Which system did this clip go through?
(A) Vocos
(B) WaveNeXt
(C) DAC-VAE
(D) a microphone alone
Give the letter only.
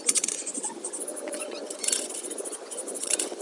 A